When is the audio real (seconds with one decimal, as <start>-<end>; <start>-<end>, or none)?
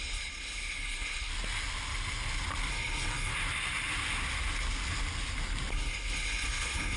1.3-2.7; 3.3-5.7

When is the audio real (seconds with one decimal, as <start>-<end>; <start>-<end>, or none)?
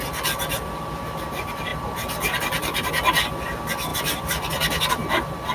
0.0-1.7; 2.9-3.9; 4.9-5.5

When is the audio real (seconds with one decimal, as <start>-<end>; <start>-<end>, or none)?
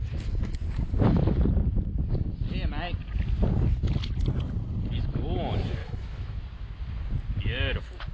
0.0-5.8; 6.4-8.1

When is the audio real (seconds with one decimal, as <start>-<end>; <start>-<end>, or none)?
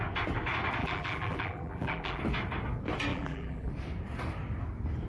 0.0-0.8; 2.2-3.1; 3.7-5.1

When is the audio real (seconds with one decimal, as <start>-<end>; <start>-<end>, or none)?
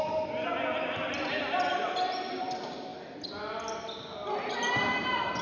0.0-5.4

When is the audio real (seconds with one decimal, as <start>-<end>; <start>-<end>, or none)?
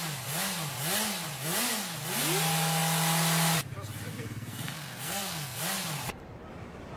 0.0-4.1; 5.6-7.0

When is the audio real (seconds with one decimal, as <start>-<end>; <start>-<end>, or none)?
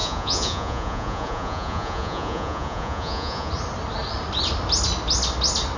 3.5-5.8